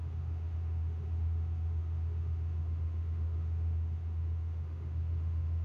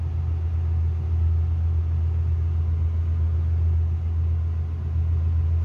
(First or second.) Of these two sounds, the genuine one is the second